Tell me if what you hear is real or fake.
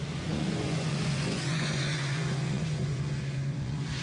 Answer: fake